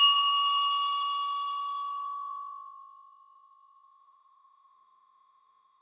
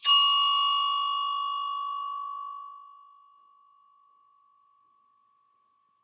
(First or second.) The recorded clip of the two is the second